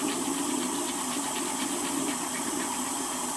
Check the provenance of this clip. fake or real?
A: real